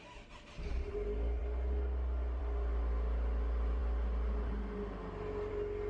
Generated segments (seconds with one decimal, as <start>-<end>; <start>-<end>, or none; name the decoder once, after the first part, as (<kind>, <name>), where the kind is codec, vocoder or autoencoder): none